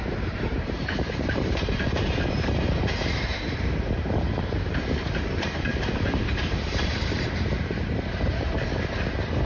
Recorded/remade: remade